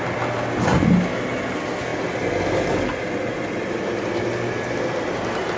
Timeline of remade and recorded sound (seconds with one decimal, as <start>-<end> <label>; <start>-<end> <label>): 0.0-5.6 recorded